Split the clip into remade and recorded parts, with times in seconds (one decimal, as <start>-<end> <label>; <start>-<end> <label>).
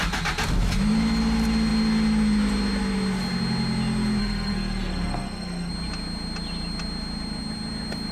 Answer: 0.0-4.2 recorded; 4.2-5.7 remade; 5.7-8.1 recorded